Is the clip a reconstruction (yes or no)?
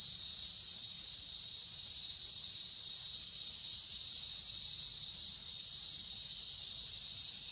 yes